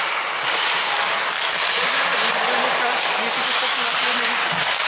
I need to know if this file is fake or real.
real